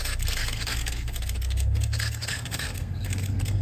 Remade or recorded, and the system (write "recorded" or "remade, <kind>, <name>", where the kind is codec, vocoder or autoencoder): remade, codec, SNAC